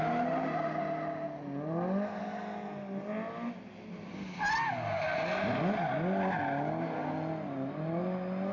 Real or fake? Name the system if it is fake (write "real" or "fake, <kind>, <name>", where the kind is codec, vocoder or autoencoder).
real